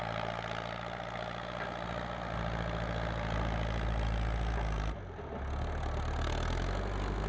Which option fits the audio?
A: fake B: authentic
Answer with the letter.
B